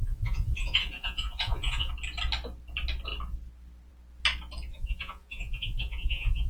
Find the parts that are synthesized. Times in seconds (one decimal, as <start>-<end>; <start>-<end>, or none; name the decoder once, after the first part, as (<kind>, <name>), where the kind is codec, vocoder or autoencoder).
0.0-1.9 (vocoder, Vocos); 4.7-6.5